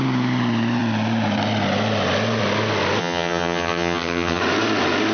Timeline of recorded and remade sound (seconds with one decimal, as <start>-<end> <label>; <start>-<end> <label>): 0.0-3.0 recorded; 3.0-4.4 remade; 4.4-5.1 recorded